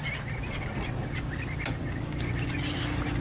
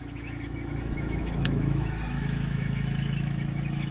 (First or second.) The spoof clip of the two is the second